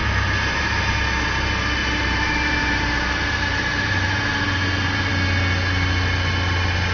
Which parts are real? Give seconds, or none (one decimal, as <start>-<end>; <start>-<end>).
0.8-1.8; 5.1-6.9